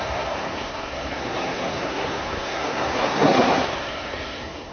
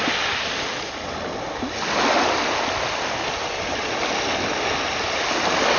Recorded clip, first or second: second